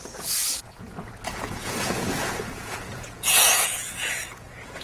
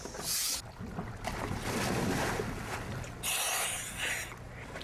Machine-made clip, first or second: first